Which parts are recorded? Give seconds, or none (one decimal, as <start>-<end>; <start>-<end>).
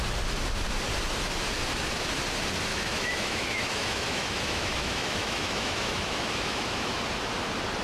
0.0-2.7; 7.0-7.8